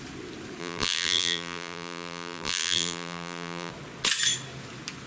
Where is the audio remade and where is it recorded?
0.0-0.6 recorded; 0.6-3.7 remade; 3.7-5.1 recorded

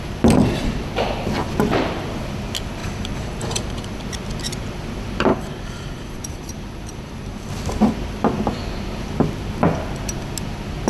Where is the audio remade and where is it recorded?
0.0-2.8 recorded; 2.8-4.0 remade; 4.0-5.3 recorded; 5.3-7.5 remade; 7.5-10.9 recorded

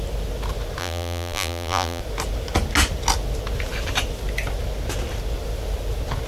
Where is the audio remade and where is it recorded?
0.0-0.8 recorded; 0.8-2.0 remade; 2.0-6.3 recorded

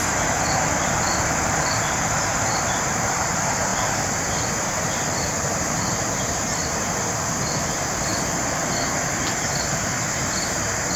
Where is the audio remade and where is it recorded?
0.0-11.0 remade